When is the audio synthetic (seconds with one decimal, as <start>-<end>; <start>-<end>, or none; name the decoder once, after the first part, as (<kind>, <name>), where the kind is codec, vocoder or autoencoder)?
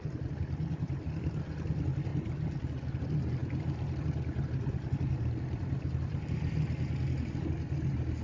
none